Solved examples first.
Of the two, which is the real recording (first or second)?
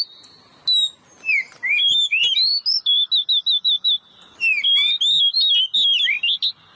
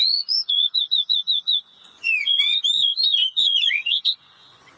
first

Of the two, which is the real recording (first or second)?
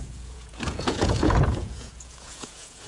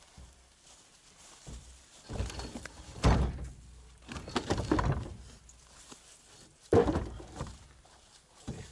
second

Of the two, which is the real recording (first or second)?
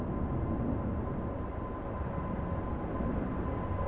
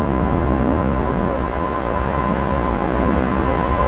first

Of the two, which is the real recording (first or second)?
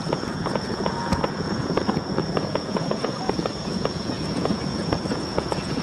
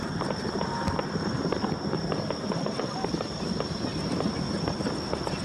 second